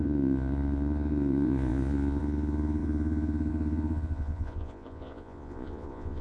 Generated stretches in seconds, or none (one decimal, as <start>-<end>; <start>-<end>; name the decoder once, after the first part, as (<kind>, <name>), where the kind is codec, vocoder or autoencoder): 0.0-6.2 (vocoder, Vocos)

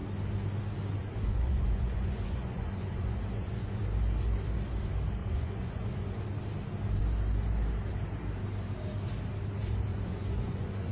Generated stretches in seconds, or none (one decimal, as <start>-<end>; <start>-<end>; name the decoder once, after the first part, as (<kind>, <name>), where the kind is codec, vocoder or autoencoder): 1.0-3.8 (vocoder, Vocos); 5.2-6.2; 9.9-10.9

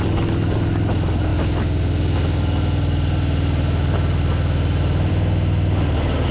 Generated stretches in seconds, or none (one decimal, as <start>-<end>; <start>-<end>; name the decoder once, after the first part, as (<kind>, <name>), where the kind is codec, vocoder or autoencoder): none

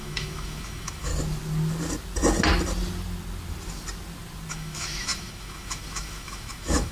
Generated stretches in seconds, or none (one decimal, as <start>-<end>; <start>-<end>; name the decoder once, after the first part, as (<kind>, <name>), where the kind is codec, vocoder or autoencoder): 0.0-1.1 (autoencoder, DAC-VAE); 4.5-6.9

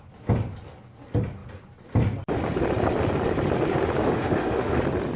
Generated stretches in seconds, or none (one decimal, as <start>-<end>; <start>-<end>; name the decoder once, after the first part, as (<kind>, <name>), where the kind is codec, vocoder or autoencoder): 4.0-4.8 (autoencoder, DAC-VAE)

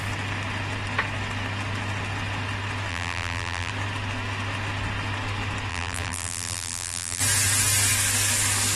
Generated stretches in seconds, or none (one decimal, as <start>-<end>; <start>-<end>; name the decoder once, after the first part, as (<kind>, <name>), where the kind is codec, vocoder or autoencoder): 2.9-3.7 (vocoder, BigVGAN v2); 5.7-7.2

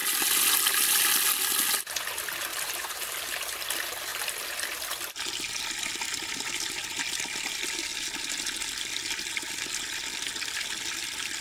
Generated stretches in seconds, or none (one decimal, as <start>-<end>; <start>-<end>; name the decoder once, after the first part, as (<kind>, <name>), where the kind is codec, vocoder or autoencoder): 2.5-3.6 (vocoder, BigVGAN v2)